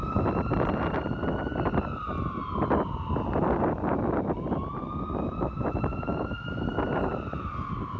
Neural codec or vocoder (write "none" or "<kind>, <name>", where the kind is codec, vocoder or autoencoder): none